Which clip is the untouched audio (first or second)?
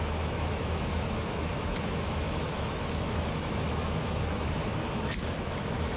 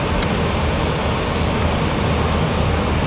second